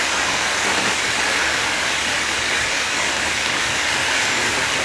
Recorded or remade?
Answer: remade